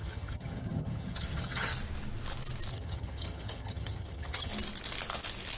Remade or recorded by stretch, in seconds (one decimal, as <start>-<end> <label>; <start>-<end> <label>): 0.0-1.7 remade; 1.7-2.7 recorded; 2.7-4.5 remade; 4.5-5.6 recorded